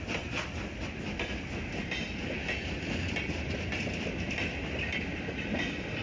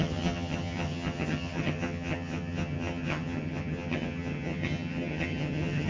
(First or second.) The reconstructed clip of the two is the second